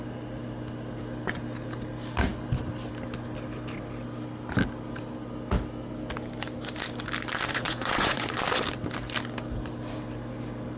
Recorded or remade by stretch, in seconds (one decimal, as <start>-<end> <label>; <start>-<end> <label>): 0.0-7.5 recorded; 7.5-8.4 remade; 8.4-10.8 recorded